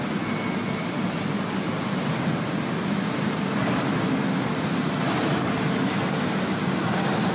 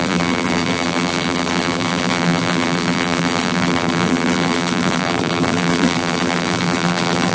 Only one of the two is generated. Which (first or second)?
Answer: second